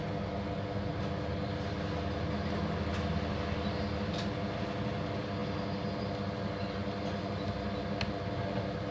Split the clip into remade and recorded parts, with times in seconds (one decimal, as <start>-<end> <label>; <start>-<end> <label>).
0.0-8.9 recorded